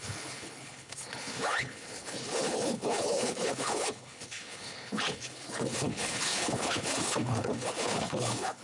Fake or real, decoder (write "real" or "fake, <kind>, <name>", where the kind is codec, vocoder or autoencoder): fake, codec, HILCodec